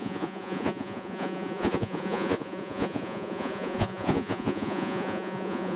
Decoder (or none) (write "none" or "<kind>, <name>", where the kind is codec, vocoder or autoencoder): vocoder, Vocos